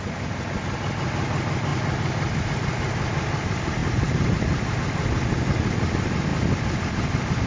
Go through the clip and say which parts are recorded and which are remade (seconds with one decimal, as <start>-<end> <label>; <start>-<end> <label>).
0.0-3.8 recorded; 3.8-4.7 remade; 4.7-7.5 recorded